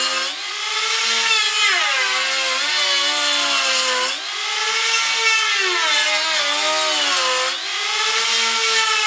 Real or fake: real